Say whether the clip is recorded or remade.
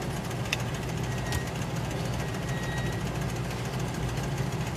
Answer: recorded